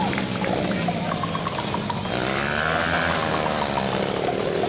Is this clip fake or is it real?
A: real